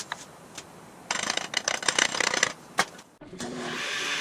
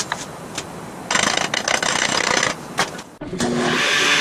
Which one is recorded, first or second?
second